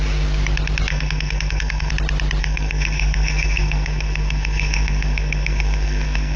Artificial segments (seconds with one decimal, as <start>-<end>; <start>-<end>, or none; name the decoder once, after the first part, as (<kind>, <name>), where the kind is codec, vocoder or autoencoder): 0.9-1.9 (codec, SNAC); 2.4-6.4